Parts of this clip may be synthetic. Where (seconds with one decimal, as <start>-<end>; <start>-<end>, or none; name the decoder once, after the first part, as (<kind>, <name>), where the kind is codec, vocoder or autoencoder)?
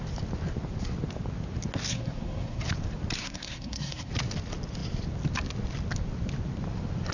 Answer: 1.9-2.6 (codec, SNAC); 3.2-4.1